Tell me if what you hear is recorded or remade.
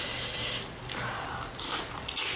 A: recorded